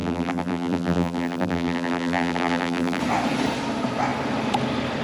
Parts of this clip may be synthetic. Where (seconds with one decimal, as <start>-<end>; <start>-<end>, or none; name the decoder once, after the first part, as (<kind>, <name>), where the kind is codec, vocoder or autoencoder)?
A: 0.0-3.0 (vocoder, BigVGAN v2)